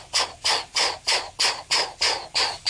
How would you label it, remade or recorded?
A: recorded